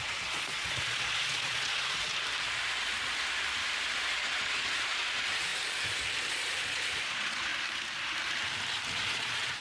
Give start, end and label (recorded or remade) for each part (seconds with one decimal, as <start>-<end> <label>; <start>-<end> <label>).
0.0-2.1 remade; 2.1-4.2 recorded; 4.2-5.5 remade; 5.5-6.5 recorded; 6.5-7.5 remade; 7.5-8.9 recorded; 8.9-9.6 remade